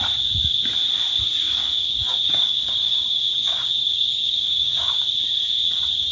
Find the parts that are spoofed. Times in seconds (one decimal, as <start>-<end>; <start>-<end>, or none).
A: 1.4-5.1